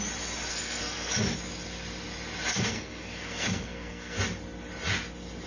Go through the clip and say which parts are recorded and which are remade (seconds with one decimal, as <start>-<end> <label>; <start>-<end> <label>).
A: 0.0-0.5 recorded; 0.5-1.1 remade; 1.1-2.5 recorded; 2.5-4.2 remade; 4.2-5.5 recorded